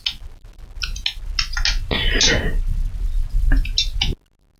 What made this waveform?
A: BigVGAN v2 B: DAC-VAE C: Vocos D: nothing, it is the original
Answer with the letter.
D